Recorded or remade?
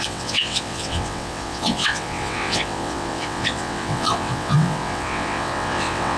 remade